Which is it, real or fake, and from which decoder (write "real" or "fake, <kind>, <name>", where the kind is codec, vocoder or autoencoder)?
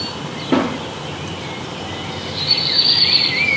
real